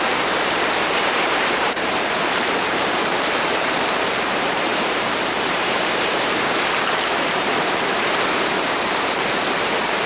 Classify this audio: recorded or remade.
remade